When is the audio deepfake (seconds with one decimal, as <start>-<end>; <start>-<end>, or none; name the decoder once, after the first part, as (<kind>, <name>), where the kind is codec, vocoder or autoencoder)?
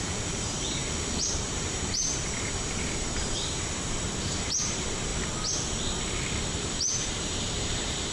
0.0-0.8 (vocoder, BigVGAN v2); 1.3-5.1; 6.4-8.1